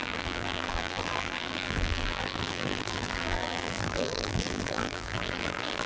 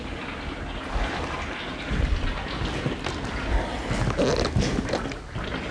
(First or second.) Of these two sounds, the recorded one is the second